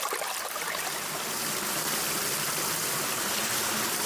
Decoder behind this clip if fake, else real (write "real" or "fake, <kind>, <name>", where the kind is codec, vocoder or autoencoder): real